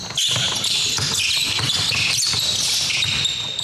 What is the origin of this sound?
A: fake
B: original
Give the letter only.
B